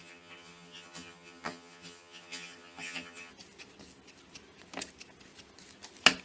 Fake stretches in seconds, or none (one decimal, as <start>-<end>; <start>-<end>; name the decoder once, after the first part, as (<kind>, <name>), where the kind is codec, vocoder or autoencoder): 0.0-3.3 (vocoder, HiFi-GAN)